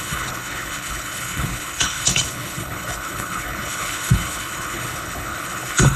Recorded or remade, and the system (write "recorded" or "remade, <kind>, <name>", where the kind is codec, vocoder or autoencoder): remade, codec, HILCodec